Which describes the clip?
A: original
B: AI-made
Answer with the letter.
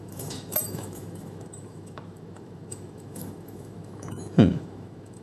B